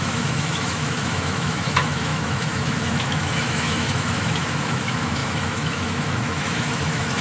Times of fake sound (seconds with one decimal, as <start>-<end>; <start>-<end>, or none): 0.0-7.2